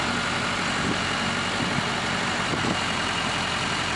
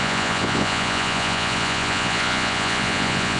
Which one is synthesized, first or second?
second